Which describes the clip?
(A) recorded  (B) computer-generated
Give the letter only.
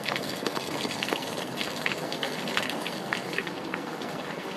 B